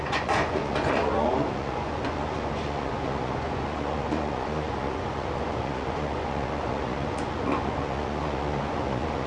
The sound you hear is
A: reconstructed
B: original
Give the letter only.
A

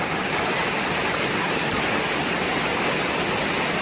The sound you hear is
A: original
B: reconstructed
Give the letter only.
A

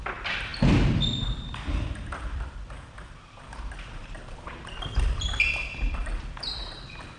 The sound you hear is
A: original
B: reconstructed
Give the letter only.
A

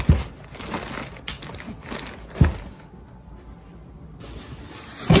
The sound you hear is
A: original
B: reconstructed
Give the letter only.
A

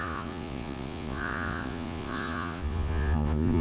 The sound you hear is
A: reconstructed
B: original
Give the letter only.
A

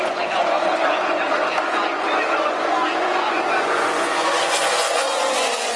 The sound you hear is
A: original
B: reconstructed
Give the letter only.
B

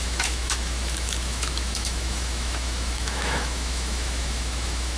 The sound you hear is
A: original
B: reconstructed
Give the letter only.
B